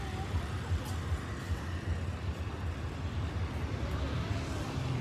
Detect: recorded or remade recorded